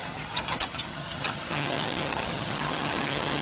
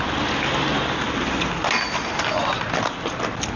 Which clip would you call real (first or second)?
second